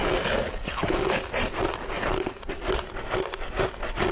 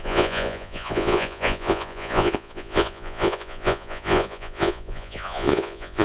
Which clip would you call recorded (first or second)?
first